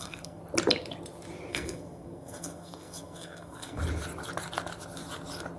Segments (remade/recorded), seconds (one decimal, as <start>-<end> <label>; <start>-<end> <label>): 0.0-0.4 remade; 0.4-1.5 recorded; 1.5-3.8 remade; 3.8-5.6 recorded